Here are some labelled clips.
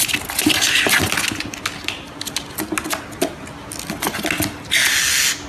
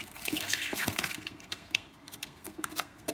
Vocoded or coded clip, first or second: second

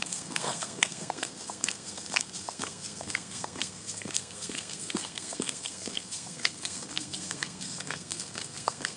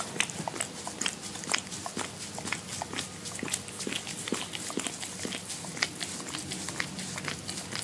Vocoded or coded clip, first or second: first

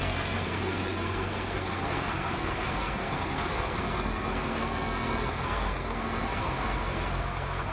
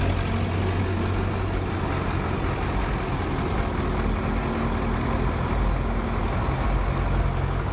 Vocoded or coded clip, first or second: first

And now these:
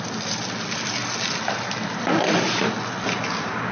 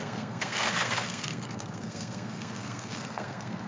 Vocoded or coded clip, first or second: second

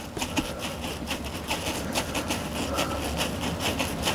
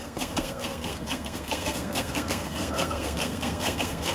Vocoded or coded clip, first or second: second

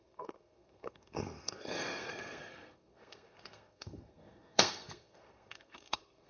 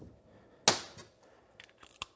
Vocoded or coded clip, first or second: first